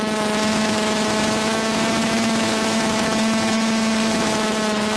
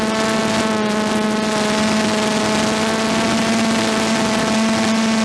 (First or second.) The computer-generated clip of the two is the first